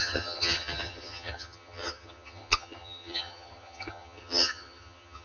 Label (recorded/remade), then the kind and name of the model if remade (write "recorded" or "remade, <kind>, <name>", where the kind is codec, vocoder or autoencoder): remade, vocoder, HiFi-GAN